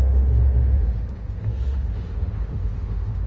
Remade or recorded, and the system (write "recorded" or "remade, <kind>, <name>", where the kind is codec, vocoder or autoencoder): remade, autoencoder, DAC-VAE